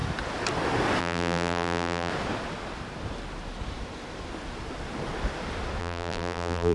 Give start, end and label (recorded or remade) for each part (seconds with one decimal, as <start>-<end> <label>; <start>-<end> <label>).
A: 0.0-1.0 recorded; 1.0-2.1 remade; 2.1-5.8 recorded; 5.8-6.7 remade